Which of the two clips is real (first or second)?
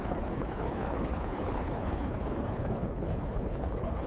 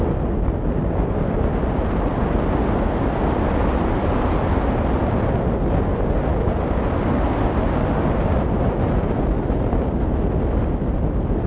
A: second